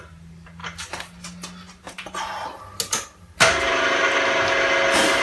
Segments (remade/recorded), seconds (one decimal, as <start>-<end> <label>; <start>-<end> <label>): 0.0-5.2 recorded

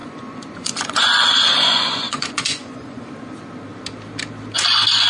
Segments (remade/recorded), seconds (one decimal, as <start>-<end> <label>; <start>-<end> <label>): 0.0-3.1 remade; 3.1-5.1 recorded

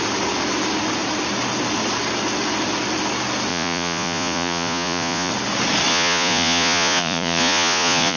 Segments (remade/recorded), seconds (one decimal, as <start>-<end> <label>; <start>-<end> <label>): 0.0-3.5 recorded; 3.5-5.3 remade; 5.3-5.9 recorded; 5.9-8.2 remade

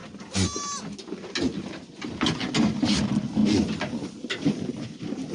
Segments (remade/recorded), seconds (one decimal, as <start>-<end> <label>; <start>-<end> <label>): 0.0-5.3 recorded

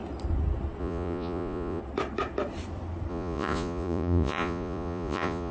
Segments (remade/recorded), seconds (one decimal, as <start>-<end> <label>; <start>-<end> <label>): 0.0-0.8 recorded; 0.8-1.8 remade; 1.8-3.1 recorded; 3.1-5.5 remade

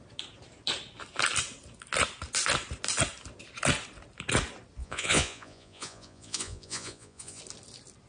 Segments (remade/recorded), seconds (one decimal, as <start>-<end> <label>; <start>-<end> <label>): 0.0-4.8 recorded; 4.8-7.4 remade; 7.4-8.1 recorded